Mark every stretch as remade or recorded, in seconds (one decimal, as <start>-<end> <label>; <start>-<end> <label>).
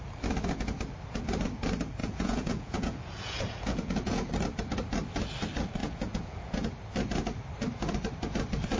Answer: 0.0-2.0 recorded; 2.0-4.3 remade; 4.3-5.8 recorded; 5.8-6.7 remade; 6.7-8.8 recorded